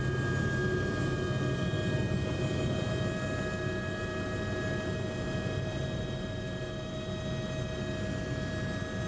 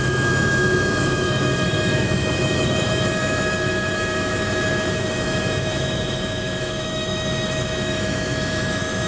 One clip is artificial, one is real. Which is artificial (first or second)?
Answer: second